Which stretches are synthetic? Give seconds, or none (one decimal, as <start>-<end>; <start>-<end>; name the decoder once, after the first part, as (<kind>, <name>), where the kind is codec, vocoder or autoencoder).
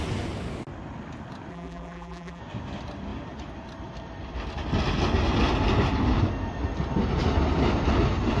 1.5-2.4 (vocoder, BigVGAN v2)